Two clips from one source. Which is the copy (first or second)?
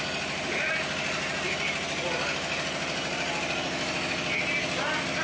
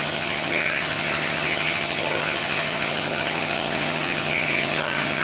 second